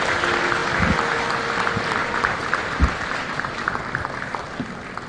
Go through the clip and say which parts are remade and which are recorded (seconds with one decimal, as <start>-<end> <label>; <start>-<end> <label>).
0.0-2.0 recorded; 2.0-3.8 remade; 3.8-5.1 recorded